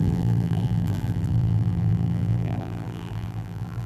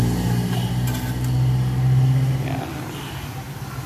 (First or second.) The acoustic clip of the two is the second